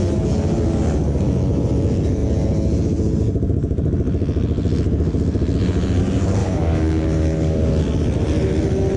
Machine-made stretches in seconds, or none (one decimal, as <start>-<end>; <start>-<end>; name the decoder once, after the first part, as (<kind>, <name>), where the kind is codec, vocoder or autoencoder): 6.4-7.8 (codec, DAC)